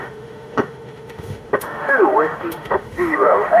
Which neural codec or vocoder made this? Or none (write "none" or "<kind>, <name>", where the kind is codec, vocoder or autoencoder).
autoencoder, DAC-VAE